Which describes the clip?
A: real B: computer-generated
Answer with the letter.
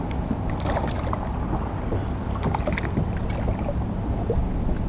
A